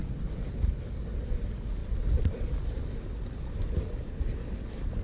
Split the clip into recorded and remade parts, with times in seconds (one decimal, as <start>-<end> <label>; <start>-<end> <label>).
0.0-1.8 recorded; 1.8-4.0 remade; 4.0-5.0 recorded